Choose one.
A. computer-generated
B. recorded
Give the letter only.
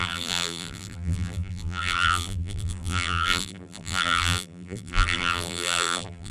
A